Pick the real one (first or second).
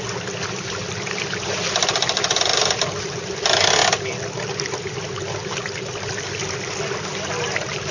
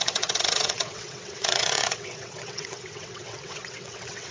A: first